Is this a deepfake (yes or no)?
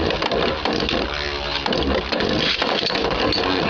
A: no